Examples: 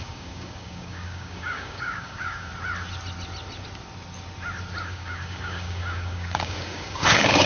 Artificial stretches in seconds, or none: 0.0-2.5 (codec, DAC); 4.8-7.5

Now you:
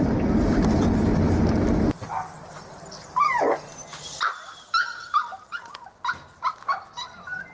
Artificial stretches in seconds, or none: none